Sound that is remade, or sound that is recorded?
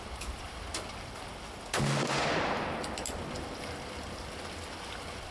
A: recorded